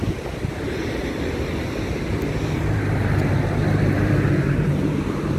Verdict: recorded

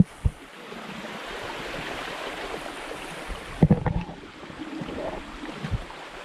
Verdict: recorded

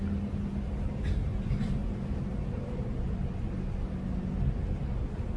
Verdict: recorded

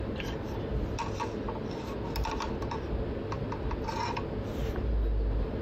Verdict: recorded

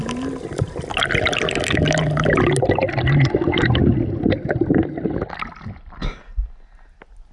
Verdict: recorded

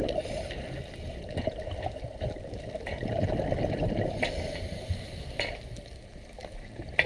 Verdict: recorded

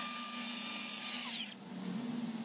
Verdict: recorded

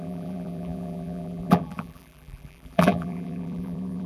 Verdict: remade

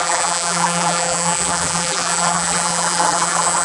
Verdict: remade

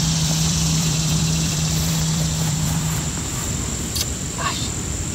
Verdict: remade